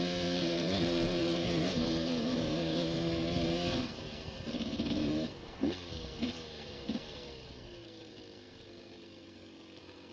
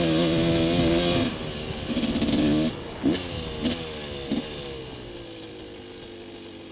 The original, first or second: second